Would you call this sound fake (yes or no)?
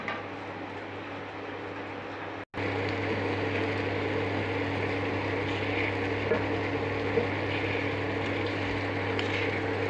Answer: no